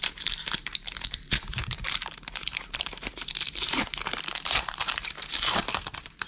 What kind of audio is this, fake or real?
fake